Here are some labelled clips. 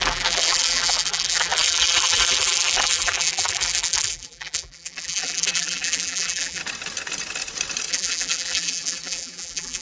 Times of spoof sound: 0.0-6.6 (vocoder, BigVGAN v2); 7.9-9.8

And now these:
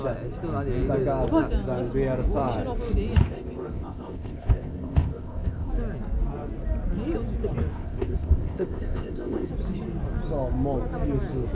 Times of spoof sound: 3.2-5.7 (codec, ZipCodec); 7.7-9.5

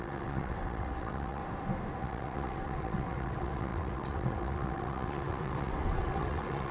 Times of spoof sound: 0.0-1.4 (vocoder, WaveNeXt); 2.0-6.7

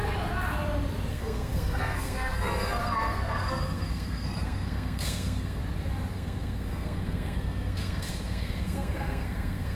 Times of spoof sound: 1.1-5.6 (codec, SNAC); 6.1-9.8

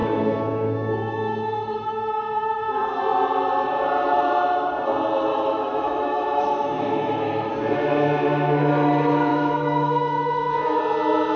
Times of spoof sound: 0.0-3.0 (autoencoder, DAC-VAE); 5.3-7.5; 9.3-10.8